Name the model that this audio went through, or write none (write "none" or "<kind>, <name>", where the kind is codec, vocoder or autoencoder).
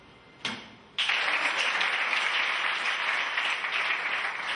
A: none